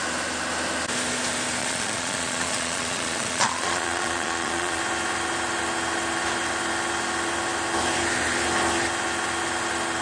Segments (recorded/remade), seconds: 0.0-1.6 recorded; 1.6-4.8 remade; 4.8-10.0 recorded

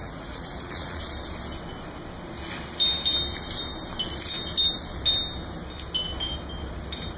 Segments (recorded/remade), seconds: 0.0-1.0 remade; 1.0-7.2 recorded

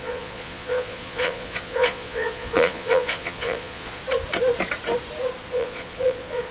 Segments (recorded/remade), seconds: 0.0-4.0 remade; 4.0-5.5 recorded; 5.5-6.5 remade

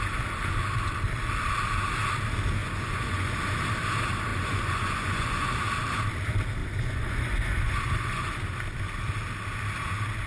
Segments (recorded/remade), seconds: 0.0-2.6 recorded; 2.6-3.4 remade; 3.4-4.3 recorded; 4.3-5.5 remade; 5.5-6.6 recorded; 6.6-8.4 remade; 8.4-10.3 recorded

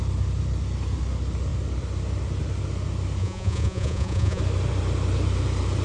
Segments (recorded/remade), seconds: 0.0-3.2 recorded; 3.2-4.4 remade; 4.4-5.8 recorded